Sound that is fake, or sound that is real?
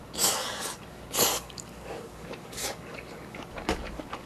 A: fake